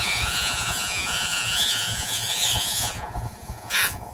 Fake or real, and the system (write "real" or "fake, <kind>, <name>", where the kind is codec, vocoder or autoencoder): fake, vocoder, Vocos